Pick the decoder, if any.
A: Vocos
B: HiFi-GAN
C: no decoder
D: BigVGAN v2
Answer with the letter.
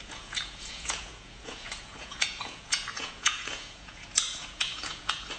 A